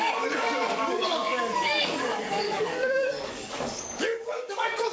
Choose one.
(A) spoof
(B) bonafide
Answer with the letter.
A